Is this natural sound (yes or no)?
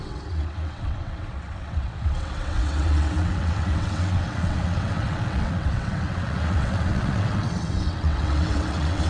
no